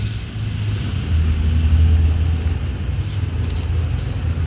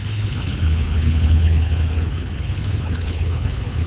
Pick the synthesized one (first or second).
second